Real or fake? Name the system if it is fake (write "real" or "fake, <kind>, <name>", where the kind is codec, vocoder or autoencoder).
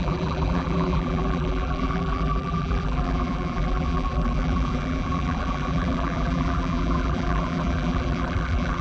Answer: fake, vocoder, BigVGAN v2